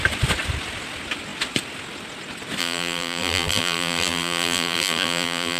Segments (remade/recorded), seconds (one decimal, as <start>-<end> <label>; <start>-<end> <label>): 0.0-2.6 recorded; 2.6-5.6 remade